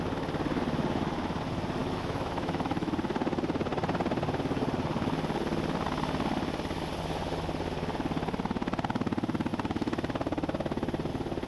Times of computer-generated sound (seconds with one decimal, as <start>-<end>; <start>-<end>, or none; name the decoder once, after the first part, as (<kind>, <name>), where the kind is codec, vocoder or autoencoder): 1.8-2.9 (autoencoder, DAC-VAE)